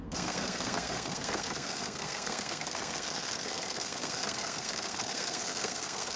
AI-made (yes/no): yes